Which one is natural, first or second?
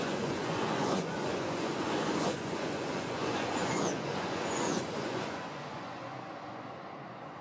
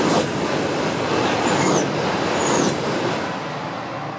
second